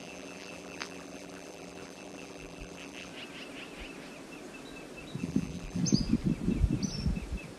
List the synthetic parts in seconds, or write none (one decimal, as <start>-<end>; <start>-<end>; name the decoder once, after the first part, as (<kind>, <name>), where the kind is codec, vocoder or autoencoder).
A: 0.0-3.1 (vocoder, BigVGAN v2); 5.2-5.8